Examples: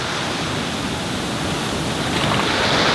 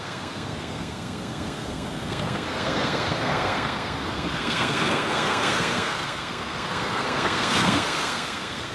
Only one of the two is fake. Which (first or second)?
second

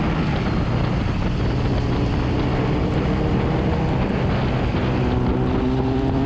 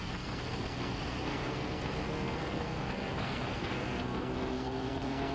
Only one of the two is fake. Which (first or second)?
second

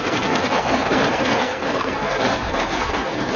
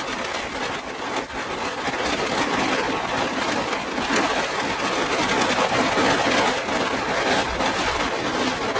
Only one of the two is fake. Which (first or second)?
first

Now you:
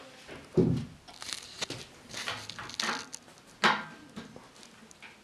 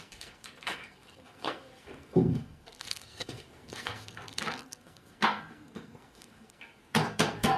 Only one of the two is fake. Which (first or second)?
second